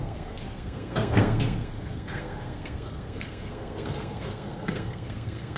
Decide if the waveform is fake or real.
fake